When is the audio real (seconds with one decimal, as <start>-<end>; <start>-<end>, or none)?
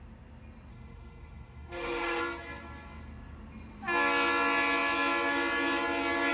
0.0-0.7; 2.2-6.3